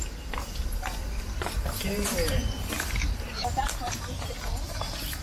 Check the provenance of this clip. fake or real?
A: fake